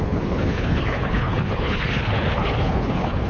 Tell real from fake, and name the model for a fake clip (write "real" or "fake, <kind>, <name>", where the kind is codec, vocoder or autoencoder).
fake, codec, HILCodec